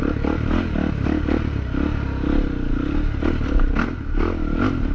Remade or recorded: recorded